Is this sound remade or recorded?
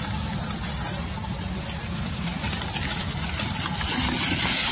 recorded